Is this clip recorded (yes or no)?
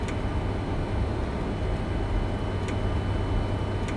yes